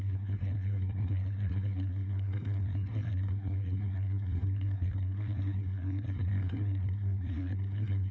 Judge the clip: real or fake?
fake